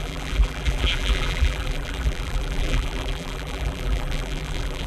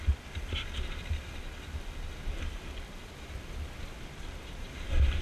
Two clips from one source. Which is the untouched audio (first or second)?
second